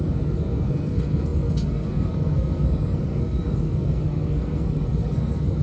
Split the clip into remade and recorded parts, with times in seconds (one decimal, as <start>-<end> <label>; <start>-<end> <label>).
0.0-5.6 remade